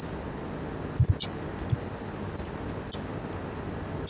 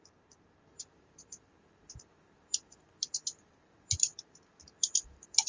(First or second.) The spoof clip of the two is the second